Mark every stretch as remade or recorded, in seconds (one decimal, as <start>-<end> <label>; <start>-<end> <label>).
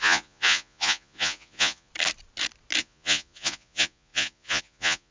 0.0-1.9 remade; 1.9-2.8 recorded; 2.8-5.1 remade